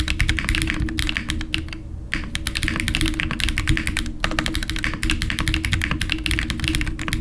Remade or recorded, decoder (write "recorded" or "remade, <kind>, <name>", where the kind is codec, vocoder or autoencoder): recorded